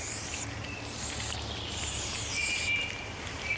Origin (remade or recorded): recorded